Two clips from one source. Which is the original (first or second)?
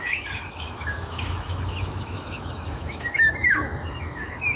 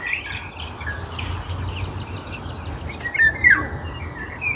second